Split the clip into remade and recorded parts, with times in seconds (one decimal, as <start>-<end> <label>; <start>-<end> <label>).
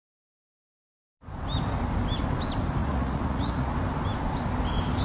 0.0-2.8 recorded; 2.8-3.7 remade; 3.7-5.0 recorded